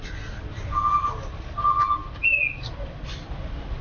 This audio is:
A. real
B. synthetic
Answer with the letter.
A